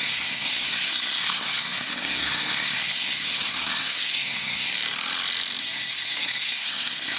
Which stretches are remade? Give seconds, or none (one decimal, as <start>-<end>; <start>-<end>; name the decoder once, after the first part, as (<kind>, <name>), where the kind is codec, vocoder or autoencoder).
0.0-4.7 (codec, SNAC); 5.6-7.2